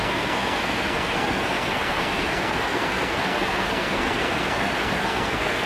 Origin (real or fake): fake